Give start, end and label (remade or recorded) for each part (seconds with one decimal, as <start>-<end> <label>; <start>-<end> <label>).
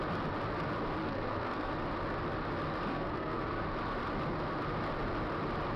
0.0-1.0 recorded; 1.0-1.7 remade; 1.7-2.9 recorded; 2.9-3.6 remade; 3.6-5.8 recorded